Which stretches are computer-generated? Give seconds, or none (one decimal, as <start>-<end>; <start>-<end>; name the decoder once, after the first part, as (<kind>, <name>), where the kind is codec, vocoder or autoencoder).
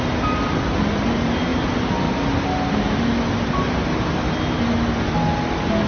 none